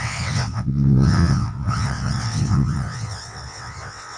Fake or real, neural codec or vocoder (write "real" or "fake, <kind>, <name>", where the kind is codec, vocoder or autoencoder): fake, vocoder, WaveNeXt